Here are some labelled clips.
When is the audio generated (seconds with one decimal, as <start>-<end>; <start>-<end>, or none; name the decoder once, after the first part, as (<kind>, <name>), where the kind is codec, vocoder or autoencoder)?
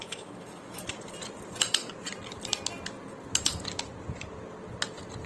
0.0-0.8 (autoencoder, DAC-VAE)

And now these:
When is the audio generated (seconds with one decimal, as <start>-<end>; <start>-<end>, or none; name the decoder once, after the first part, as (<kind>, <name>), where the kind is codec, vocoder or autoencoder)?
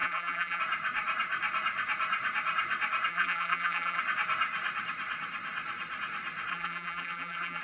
0.0-0.6 (vocoder, BigVGAN v2); 3.1-4.0; 6.5-7.6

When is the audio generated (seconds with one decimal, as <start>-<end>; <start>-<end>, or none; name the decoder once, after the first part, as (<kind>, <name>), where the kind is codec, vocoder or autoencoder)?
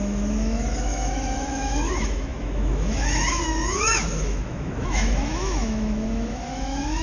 0.0-7.0 (autoencoder, DAC-VAE)